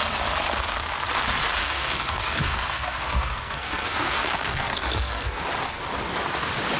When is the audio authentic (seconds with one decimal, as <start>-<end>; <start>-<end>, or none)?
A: 0.0-1.6; 5.4-6.8